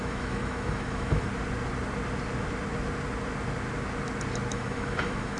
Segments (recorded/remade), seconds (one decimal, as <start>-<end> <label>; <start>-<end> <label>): 0.0-1.3 remade; 1.3-4.5 recorded; 4.5-5.4 remade